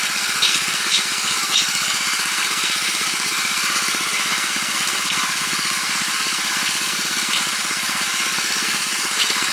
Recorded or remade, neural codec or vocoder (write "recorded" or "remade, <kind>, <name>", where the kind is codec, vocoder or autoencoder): remade, codec, SNAC